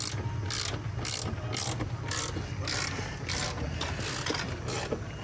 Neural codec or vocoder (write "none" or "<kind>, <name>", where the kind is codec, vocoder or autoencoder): none